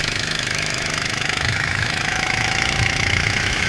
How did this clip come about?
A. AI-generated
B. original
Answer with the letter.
A